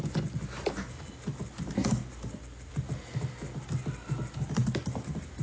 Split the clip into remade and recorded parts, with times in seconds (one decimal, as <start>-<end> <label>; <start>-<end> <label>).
0.0-5.4 recorded